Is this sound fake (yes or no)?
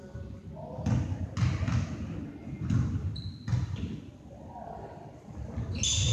no